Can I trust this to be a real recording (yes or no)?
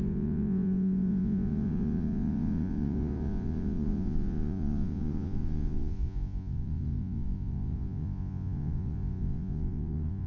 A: no